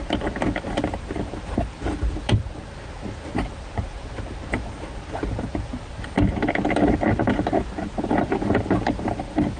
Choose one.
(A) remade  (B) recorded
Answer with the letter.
B